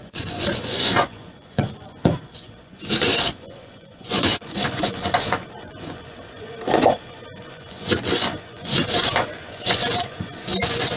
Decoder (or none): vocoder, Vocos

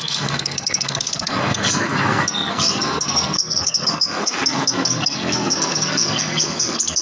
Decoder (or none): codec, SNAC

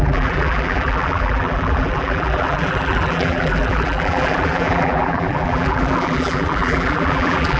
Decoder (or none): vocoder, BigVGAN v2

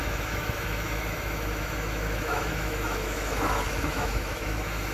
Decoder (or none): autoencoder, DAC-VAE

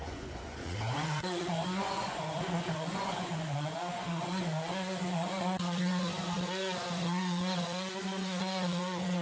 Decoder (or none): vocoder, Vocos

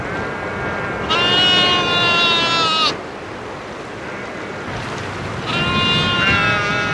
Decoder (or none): none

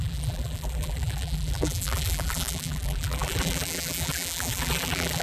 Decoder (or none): vocoder, BigVGAN v2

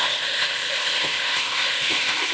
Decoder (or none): codec, ZipCodec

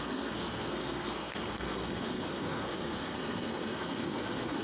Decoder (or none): codec, SNAC